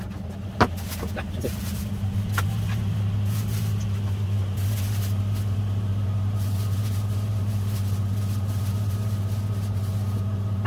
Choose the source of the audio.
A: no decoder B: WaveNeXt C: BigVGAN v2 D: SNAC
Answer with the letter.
A